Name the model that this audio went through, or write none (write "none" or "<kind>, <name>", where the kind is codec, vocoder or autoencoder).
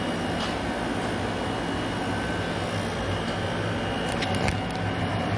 none